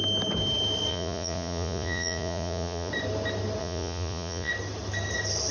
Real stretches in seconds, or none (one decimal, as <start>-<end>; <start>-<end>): 0.0-0.9; 2.9-3.6; 4.5-5.5